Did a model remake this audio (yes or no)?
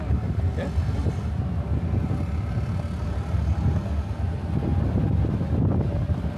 no